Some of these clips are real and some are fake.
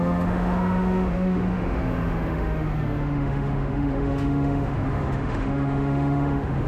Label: fake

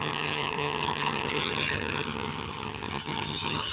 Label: fake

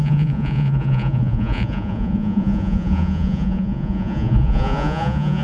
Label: fake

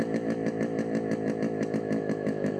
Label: fake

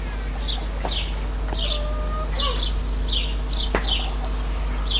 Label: real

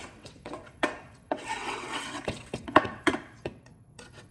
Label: fake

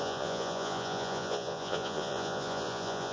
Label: fake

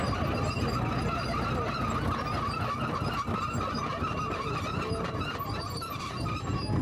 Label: real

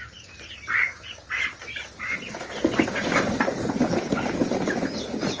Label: real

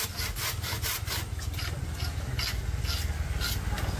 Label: real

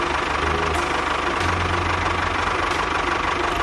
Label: real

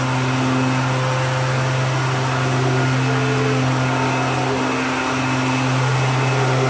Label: real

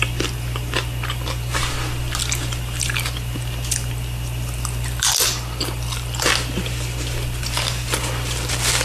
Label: real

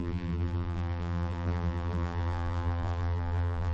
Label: fake